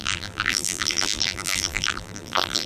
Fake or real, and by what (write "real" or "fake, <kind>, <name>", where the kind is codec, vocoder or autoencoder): fake, vocoder, BigVGAN v2